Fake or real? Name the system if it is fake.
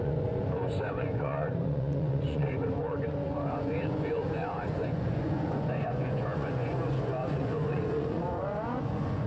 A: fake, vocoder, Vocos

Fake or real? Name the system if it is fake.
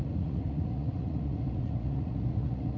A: fake, vocoder, Vocos